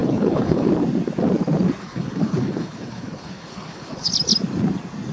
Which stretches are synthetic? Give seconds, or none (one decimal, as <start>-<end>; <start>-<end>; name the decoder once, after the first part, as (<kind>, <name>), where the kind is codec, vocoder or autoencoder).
0.0-0.7 (codec, HILCodec); 1.8-4.1